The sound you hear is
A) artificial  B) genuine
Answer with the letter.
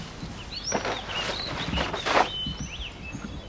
B